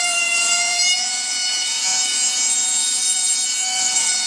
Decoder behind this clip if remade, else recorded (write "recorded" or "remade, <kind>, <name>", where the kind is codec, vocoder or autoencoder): remade, vocoder, Vocos